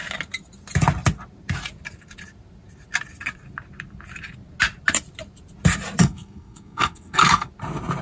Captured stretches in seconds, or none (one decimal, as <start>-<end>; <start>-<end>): 0.0-6.0; 7.5-8.0